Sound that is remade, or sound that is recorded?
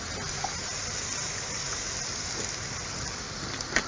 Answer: recorded